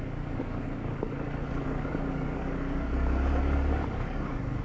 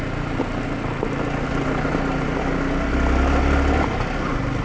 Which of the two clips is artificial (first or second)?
first